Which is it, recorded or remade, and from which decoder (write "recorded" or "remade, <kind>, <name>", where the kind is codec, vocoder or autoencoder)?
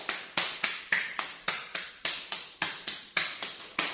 remade, vocoder, BigVGAN v2